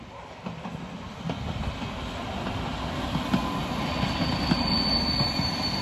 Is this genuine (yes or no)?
yes